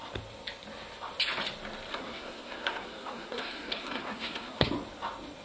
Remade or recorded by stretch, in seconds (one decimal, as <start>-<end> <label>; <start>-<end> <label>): 0.0-1.9 recorded; 1.9-4.7 remade; 4.7-5.4 recorded